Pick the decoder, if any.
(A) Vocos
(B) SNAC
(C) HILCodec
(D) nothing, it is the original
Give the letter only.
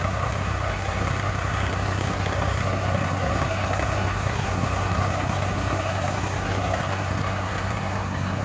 B